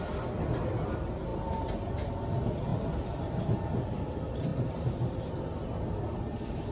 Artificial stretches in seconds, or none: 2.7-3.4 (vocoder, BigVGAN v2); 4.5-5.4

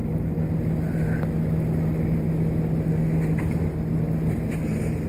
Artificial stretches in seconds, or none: 0.0-2.9 (vocoder, BigVGAN v2)